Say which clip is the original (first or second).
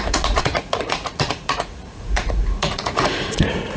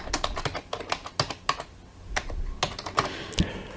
second